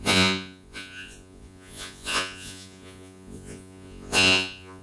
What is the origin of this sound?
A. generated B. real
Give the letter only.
A